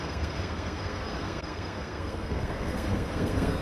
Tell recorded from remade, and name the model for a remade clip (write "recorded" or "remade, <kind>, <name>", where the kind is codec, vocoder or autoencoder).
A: remade, codec, SNAC